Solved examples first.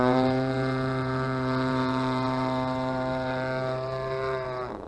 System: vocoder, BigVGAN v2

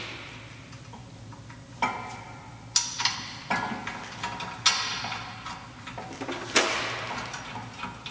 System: none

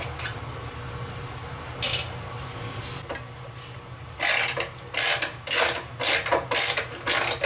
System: none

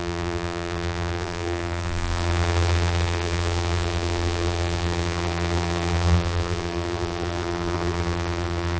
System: vocoder, BigVGAN v2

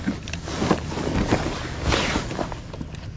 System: none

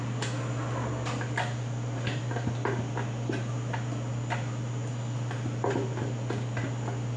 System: none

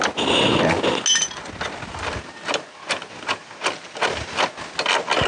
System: none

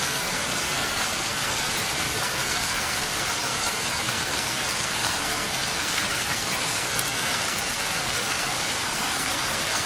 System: codec, SNAC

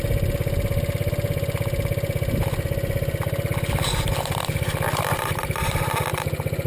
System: none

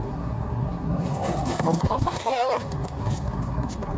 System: codec, SNAC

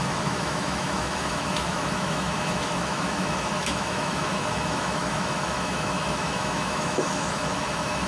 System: autoencoder, DAC-VAE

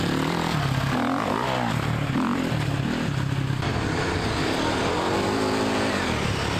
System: none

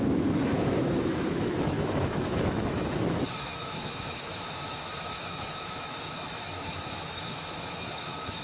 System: autoencoder, DAC-VAE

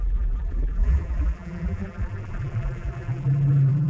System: vocoder, BigVGAN v2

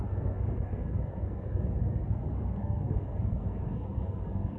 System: codec, SNAC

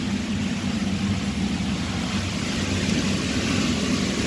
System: none